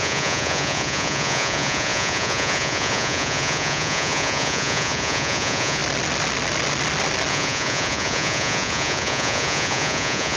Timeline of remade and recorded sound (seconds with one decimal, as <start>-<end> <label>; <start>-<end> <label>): 0.0-5.8 remade; 5.8-7.3 recorded; 7.3-10.4 remade